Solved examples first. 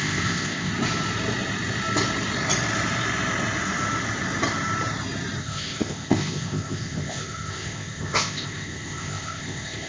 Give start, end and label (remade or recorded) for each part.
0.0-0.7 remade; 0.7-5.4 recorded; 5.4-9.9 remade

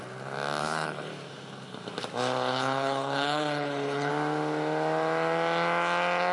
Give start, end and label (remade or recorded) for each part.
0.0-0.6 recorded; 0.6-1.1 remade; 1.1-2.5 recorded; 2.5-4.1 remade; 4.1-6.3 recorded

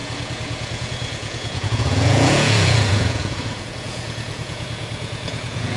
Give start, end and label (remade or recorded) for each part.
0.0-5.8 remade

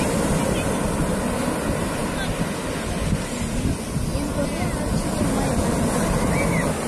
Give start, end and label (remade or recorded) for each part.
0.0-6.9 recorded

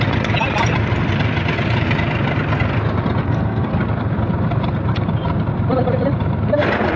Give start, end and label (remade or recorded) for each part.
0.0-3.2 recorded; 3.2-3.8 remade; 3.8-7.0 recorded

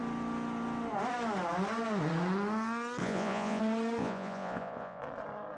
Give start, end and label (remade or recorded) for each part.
0.0-3.0 recorded; 3.0-3.6 remade; 3.6-4.0 recorded; 4.0-5.0 remade; 5.0-5.6 recorded

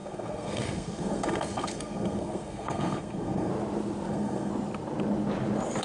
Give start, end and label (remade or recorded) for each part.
0.0-3.5 remade; 3.5-4.1 recorded; 4.1-4.5 remade; 4.5-5.8 recorded

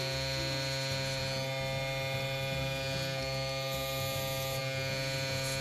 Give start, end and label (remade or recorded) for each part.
0.0-5.6 recorded